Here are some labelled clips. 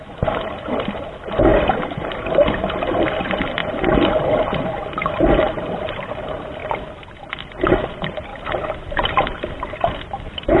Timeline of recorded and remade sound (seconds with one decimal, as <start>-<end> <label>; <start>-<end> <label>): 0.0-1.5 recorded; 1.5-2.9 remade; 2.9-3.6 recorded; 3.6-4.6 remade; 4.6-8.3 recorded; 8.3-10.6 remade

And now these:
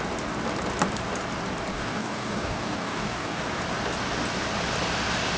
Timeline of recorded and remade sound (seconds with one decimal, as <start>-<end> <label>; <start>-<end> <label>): 0.0-1.7 recorded; 1.7-3.4 remade; 3.4-5.4 recorded

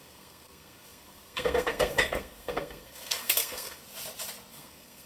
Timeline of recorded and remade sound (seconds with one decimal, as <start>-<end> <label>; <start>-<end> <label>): 0.0-3.8 remade; 3.8-4.5 recorded; 4.5-5.1 remade